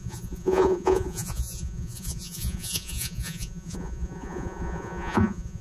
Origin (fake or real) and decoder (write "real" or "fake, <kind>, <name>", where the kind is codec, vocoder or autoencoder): fake, vocoder, Vocos